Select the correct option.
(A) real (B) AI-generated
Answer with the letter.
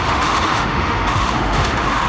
B